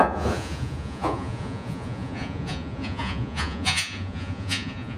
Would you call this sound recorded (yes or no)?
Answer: no